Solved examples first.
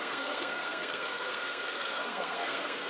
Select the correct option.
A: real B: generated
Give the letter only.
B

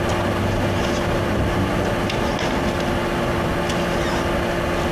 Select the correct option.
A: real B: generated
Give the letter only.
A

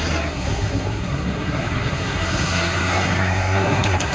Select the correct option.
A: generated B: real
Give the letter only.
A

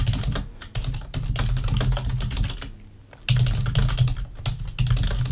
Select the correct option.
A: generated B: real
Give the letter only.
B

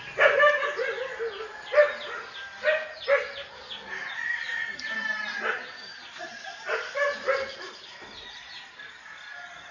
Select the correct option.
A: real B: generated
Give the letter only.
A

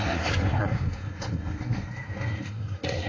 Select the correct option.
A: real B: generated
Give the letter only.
B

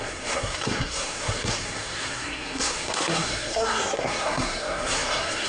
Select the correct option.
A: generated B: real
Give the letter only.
A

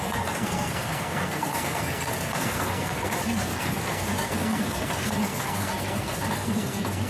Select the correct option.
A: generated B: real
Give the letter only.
A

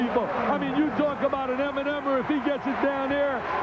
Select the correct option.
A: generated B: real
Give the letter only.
B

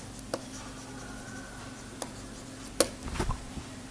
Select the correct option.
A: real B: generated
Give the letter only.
A